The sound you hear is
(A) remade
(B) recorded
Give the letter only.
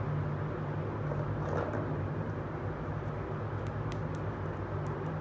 B